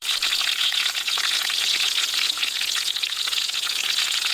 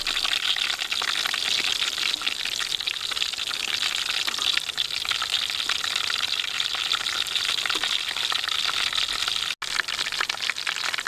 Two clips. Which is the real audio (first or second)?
second